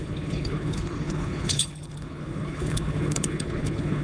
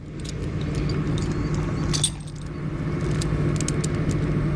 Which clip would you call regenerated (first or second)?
first